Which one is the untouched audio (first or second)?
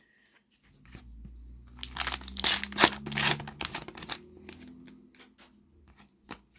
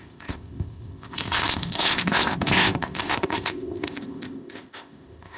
first